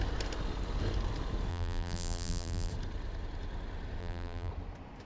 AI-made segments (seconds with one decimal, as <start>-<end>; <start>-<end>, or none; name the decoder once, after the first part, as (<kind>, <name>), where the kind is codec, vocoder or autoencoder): 1.5-2.7 (vocoder, BigVGAN v2); 4.0-4.5